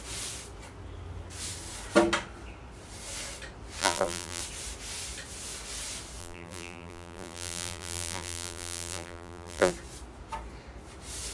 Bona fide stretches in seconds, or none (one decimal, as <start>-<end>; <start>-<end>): 0.0-3.8; 4.4-6.2; 9.7-11.3